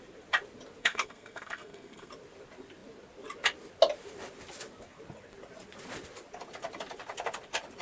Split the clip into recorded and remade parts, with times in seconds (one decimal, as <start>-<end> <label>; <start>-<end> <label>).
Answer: 0.0-0.8 recorded; 0.8-2.1 remade; 2.1-7.8 recorded